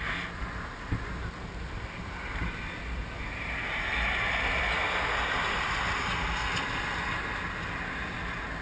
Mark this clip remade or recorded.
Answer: recorded